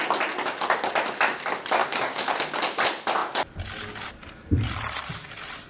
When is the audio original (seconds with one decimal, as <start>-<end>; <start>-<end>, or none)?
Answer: 0.0-1.8; 2.3-5.7